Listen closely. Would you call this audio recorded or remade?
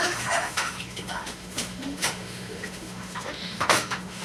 remade